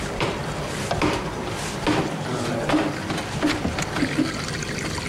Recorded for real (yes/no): yes